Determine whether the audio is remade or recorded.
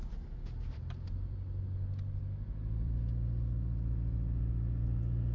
remade